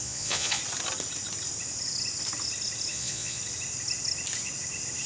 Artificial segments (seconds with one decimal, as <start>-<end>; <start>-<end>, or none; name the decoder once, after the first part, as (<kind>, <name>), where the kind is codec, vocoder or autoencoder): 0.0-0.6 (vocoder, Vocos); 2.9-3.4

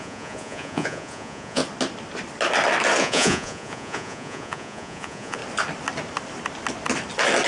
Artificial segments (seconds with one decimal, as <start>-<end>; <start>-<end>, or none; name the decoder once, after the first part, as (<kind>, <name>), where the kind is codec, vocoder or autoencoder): 0.0-1.6 (vocoder, Vocos); 3.0-5.4

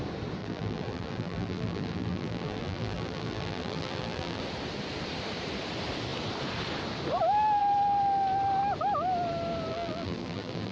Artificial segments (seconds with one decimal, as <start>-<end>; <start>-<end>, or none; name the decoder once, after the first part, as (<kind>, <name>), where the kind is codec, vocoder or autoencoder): 0.4-4.4 (vocoder, BigVGAN v2); 9.7-10.7